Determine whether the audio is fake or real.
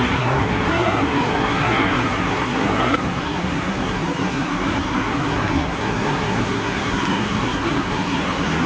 fake